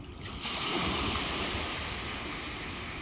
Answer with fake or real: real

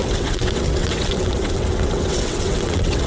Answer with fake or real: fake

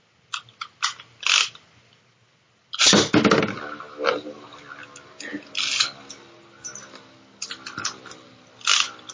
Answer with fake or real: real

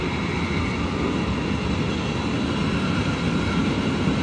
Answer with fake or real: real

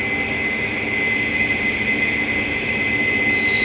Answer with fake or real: real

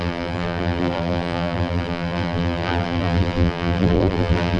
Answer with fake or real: fake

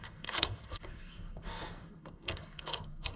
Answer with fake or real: fake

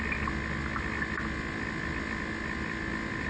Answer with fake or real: real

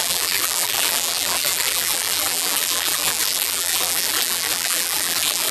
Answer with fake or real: fake